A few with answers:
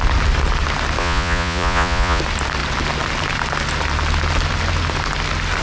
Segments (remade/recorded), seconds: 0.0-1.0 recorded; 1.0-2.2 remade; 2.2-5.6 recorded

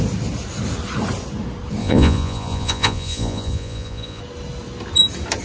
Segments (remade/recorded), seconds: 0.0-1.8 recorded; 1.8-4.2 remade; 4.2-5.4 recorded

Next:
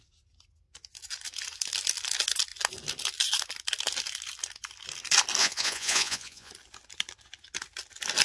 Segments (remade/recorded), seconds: 0.0-5.4 recorded; 5.4-6.5 remade; 6.5-8.2 recorded